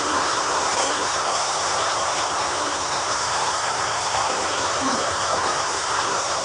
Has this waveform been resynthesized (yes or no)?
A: yes